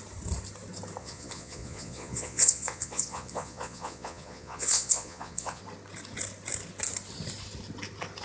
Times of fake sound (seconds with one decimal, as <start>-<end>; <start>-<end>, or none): 1.0-5.6